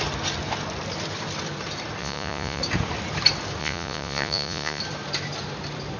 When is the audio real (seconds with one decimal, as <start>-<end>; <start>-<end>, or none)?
0.0-2.0; 2.6-3.6; 4.8-6.0